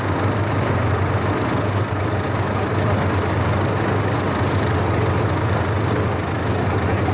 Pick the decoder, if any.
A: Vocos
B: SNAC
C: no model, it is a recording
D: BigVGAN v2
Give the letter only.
C